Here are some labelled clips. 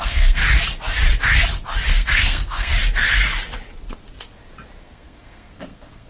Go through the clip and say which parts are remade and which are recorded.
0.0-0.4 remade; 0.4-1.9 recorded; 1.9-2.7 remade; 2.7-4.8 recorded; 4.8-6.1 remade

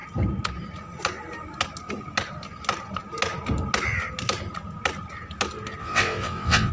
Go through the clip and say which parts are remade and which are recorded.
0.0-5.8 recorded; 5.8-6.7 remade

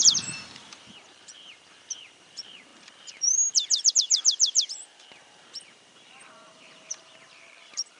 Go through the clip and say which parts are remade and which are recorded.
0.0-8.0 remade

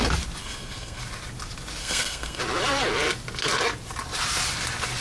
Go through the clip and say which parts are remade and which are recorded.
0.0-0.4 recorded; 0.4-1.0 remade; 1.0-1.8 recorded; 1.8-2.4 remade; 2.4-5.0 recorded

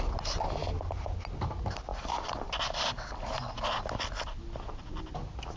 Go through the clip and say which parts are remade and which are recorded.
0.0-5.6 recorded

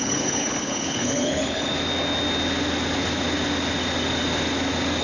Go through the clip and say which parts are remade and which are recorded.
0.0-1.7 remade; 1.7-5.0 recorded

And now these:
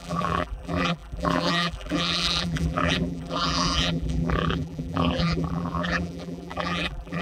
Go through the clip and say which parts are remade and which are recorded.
0.0-7.2 remade

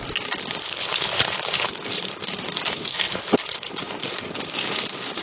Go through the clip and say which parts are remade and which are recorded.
0.0-0.6 recorded; 0.6-1.7 remade; 1.7-2.9 recorded; 2.9-3.7 remade; 3.7-5.2 recorded